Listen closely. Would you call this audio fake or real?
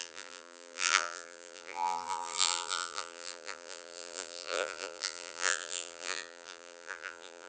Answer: fake